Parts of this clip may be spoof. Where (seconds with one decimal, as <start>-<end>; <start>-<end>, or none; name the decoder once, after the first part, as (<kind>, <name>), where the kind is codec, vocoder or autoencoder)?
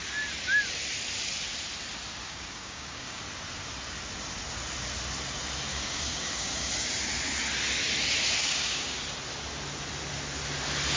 2.2-3.2 (codec, DAC); 5.7-6.7; 8.4-9.0